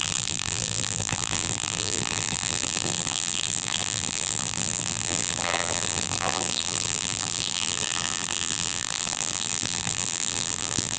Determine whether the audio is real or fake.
fake